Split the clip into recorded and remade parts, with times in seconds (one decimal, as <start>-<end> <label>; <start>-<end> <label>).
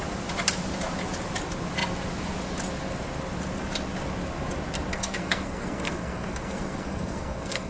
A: 0.0-4.9 recorded; 4.9-7.7 remade